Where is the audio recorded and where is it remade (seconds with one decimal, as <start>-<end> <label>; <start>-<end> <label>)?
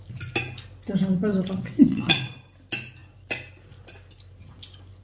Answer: 0.0-1.3 recorded; 1.3-2.3 remade; 2.3-5.0 recorded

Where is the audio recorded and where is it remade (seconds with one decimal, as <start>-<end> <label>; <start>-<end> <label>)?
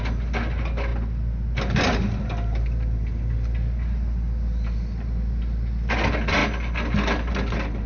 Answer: 0.0-7.9 recorded